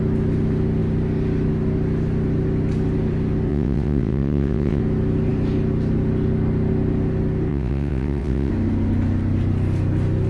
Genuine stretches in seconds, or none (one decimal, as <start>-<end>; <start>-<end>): 0.0-3.5; 4.8-7.5; 8.5-10.3